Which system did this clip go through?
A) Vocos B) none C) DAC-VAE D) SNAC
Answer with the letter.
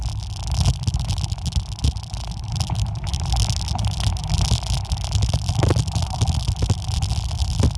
B